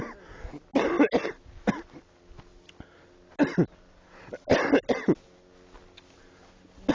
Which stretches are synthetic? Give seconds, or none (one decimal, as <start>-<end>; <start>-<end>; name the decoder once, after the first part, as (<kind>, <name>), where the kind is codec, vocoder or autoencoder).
none